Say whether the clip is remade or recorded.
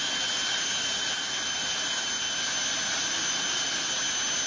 recorded